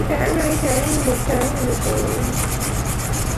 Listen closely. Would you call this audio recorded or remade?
recorded